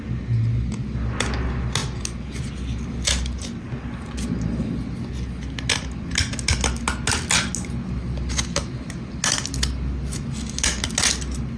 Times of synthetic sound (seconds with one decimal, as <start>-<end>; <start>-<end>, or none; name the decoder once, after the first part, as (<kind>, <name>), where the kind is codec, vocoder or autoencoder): none